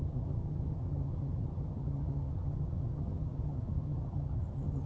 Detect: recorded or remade remade